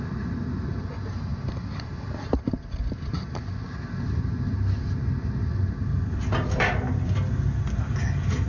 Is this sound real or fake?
real